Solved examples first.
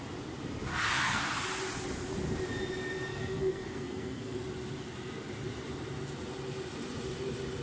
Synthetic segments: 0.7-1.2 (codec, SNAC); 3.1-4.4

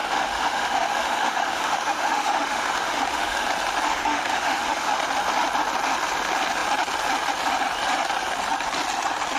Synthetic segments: 0.0-3.5 (autoencoder, DAC-VAE); 3.9-4.9

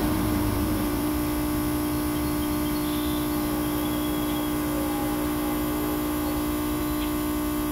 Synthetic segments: 0.0-1.1 (vocoder, BigVGAN v2)

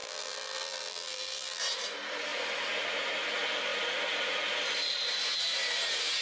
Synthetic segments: 0.0-1.6 (vocoder, BigVGAN v2)

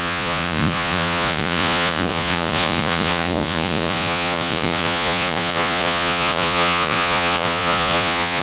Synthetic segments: 0.0-8.4 (vocoder, Vocos)

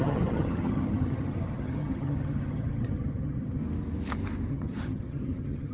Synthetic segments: 0.0-3.6 (vocoder, HiFi-GAN); 4.5-5.7

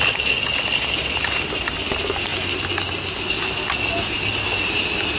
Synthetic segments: none

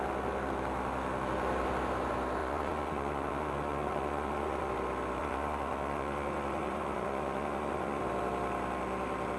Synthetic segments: 2.4-4.7 (vocoder, Vocos); 5.2-8.0